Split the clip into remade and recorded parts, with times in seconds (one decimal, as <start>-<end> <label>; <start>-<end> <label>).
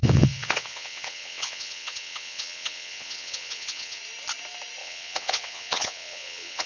0.0-4.0 remade; 4.0-4.8 recorded; 4.8-6.7 remade